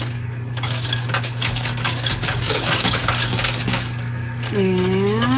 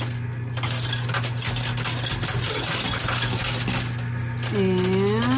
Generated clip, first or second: first